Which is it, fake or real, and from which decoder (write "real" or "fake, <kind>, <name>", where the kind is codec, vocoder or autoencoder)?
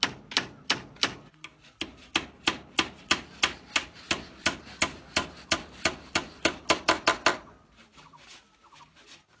real